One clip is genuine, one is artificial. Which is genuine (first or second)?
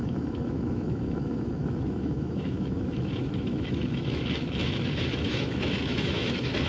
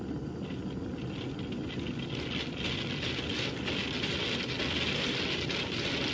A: second